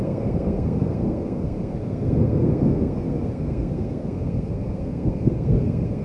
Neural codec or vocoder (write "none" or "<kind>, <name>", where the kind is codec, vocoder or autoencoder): codec, SNAC